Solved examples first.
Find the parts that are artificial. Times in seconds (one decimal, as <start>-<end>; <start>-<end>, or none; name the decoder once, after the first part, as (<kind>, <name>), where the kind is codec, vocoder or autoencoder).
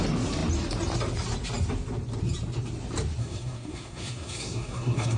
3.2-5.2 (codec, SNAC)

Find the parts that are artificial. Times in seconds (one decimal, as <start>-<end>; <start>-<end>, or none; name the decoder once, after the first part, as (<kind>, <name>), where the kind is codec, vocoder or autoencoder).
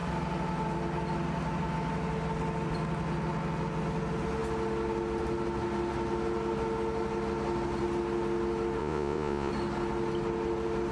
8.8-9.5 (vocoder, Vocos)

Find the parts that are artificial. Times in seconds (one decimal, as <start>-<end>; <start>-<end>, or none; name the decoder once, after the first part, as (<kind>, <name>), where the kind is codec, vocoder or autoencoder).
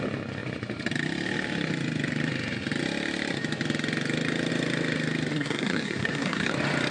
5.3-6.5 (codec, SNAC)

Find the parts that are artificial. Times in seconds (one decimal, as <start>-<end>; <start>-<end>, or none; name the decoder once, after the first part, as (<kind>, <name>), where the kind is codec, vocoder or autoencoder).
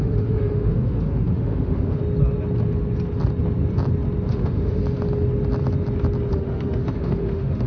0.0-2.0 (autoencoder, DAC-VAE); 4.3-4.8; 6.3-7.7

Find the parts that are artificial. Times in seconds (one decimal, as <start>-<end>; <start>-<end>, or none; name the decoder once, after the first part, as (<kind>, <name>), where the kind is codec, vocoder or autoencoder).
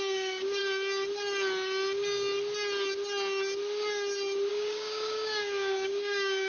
0.0-0.6 (codec, DAC); 4.5-6.5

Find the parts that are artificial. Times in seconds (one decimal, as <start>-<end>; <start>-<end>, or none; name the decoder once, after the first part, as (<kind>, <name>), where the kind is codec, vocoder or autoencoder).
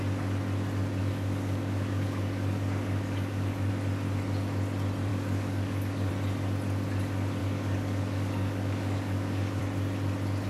1.0-3.7 (codec, DAC); 5.1-6.1; 7.4-9.6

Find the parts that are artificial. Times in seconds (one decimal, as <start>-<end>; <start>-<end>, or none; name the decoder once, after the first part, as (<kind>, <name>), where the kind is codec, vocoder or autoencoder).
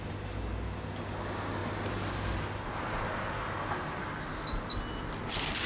none